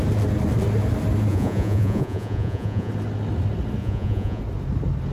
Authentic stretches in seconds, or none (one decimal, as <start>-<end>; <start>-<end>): 0.0-1.3; 2.9-3.8; 4.4-5.1